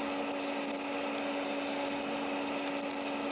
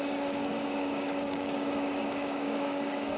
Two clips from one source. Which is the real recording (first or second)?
first